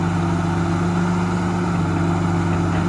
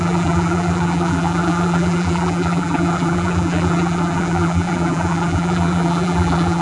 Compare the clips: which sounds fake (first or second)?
second